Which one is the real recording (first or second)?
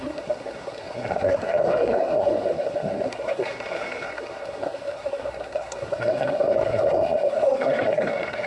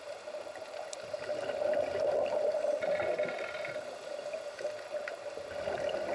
second